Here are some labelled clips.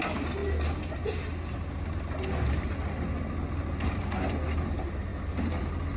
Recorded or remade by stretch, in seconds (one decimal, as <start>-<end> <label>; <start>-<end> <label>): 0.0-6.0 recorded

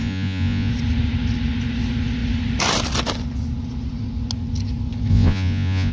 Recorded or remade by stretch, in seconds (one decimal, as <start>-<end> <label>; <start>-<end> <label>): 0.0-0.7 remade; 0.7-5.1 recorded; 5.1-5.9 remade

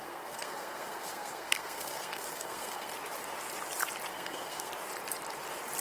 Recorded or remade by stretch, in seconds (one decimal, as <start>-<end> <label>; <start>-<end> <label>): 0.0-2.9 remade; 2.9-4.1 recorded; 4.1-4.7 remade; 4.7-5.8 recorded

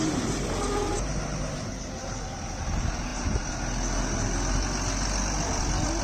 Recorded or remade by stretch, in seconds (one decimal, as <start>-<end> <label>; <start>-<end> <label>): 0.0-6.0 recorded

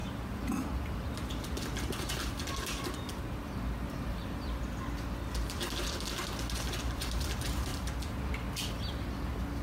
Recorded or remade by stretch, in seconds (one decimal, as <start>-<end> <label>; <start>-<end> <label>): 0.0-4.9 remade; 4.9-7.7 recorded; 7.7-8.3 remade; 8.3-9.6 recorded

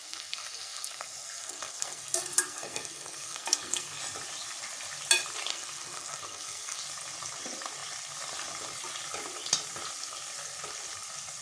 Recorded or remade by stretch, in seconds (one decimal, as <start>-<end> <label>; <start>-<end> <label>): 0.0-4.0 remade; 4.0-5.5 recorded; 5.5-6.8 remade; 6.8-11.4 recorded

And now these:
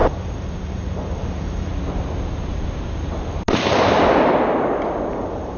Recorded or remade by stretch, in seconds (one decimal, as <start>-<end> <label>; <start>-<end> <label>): 0.0-1.7 remade; 1.7-5.1 recorded; 5.1-5.6 remade

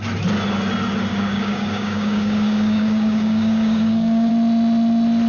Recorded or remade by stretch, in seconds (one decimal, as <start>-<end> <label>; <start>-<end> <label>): 0.0-1.1 recorded; 1.1-4.3 remade; 4.3-5.3 recorded